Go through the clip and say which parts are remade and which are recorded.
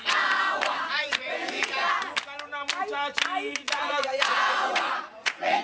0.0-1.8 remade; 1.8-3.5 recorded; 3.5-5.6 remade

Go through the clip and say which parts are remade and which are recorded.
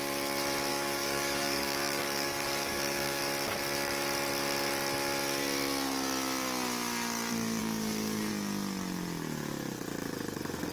0.0-0.7 recorded; 0.7-3.2 remade; 3.2-7.6 recorded; 7.6-8.3 remade; 8.3-10.7 recorded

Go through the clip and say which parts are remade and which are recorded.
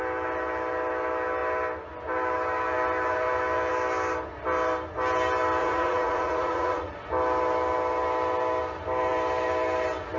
0.0-5.6 recorded; 5.6-6.9 remade; 6.9-10.2 recorded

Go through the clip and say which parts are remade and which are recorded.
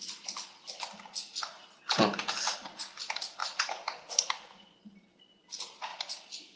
0.0-3.4 recorded; 3.4-5.2 remade; 5.2-6.6 recorded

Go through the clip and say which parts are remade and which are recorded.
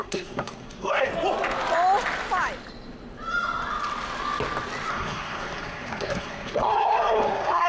0.0-1.1 remade; 1.1-4.9 recorded; 4.9-7.7 remade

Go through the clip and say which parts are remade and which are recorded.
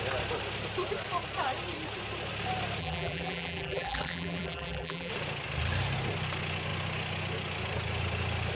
0.0-2.8 recorded; 2.8-5.1 remade; 5.1-8.5 recorded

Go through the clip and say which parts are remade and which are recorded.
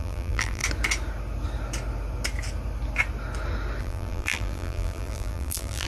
0.0-0.6 remade; 0.6-3.8 recorded; 3.8-5.9 remade